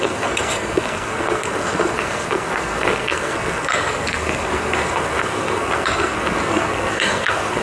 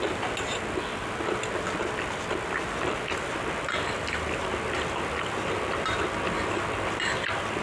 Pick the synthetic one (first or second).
first